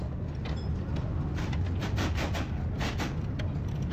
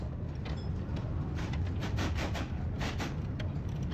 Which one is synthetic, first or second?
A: second